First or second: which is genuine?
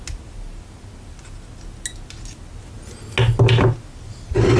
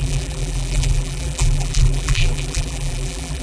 first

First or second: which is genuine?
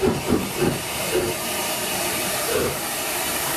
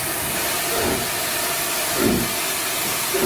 second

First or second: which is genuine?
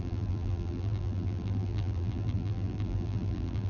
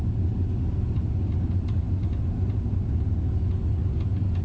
second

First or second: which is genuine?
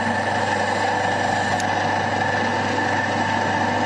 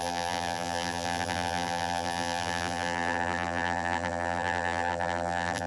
first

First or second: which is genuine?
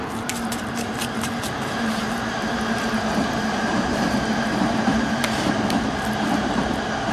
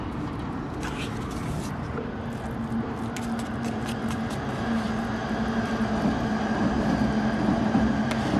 second